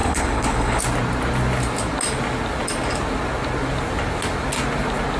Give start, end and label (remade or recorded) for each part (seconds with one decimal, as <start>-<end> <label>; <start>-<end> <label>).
0.0-0.8 remade; 0.8-5.2 recorded